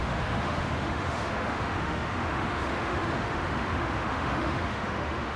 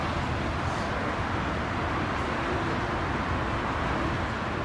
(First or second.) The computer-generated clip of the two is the first